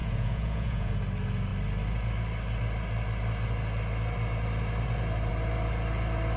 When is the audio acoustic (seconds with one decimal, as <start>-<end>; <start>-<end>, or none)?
0.9-6.4